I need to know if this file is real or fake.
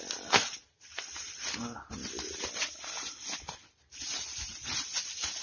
real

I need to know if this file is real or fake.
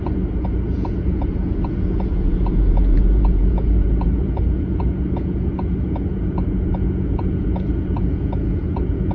fake